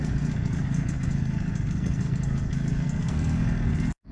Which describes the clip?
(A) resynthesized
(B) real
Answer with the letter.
A